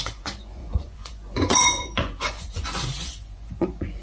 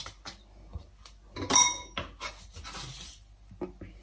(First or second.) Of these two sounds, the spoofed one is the first